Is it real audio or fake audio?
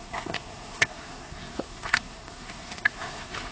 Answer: fake